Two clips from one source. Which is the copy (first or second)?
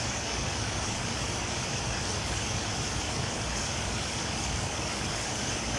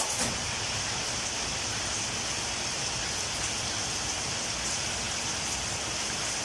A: first